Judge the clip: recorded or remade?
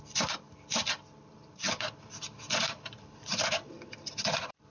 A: remade